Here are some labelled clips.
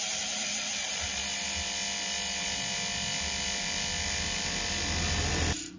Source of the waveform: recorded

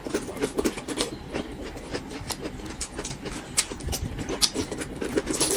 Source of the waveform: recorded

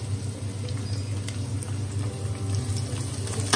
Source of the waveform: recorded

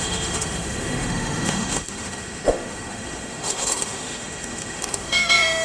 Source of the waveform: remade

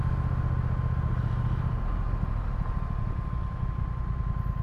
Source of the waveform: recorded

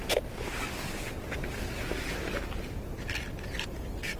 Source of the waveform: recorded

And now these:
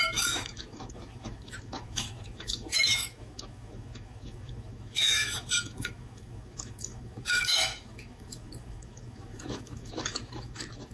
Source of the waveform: remade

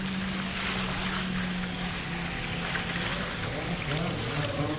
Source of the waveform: recorded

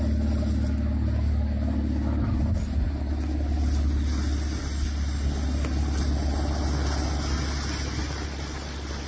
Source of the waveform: recorded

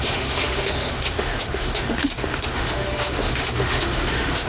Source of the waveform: remade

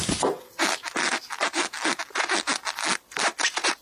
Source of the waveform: recorded